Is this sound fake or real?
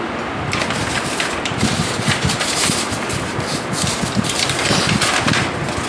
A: real